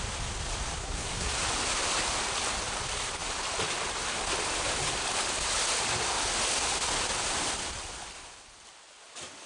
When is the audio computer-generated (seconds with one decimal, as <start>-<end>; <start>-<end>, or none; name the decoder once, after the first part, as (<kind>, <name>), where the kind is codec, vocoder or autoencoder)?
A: 0.8-1.3 (codec, SNAC)